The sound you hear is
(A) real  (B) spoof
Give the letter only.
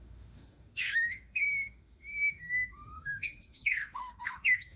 B